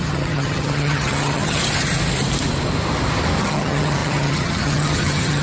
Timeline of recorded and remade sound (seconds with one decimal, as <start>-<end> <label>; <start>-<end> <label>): 0.0-1.6 remade; 1.6-3.4 recorded; 3.4-5.4 remade